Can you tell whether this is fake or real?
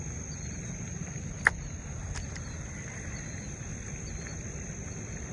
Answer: real